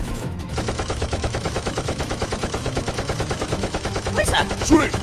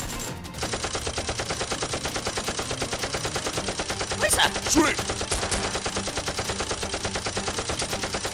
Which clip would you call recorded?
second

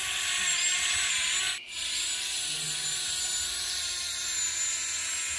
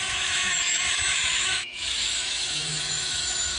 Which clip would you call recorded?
first